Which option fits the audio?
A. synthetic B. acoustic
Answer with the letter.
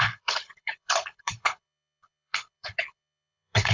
A